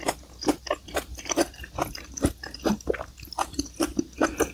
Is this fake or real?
real